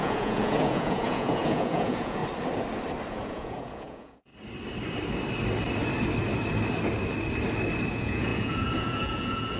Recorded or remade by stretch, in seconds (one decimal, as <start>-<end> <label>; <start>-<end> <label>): 0.0-2.2 remade; 2.2-3.1 recorded; 3.1-4.3 remade; 4.3-7.9 recorded; 7.9-9.6 remade